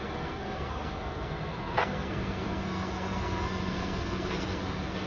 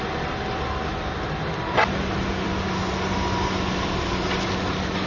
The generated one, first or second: first